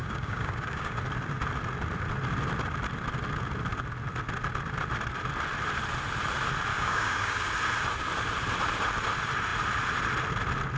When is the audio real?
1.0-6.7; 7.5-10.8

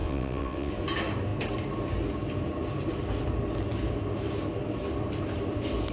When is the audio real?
0.7-5.9

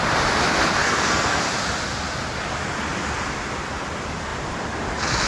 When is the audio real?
0.0-0.8; 1.4-5.3

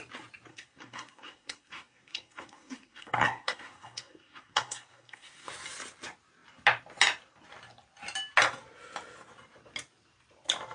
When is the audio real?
0.0-0.5; 5.5-10.7

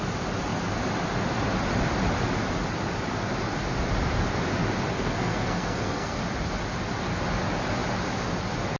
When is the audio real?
0.0-4.9; 6.2-8.8

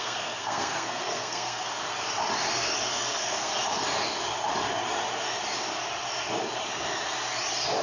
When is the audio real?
1.8-2.9; 3.5-7.8

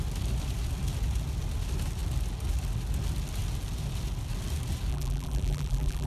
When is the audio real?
0.0-4.9